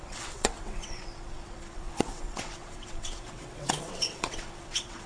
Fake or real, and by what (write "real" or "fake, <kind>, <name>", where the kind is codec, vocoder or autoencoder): fake, vocoder, WaveNeXt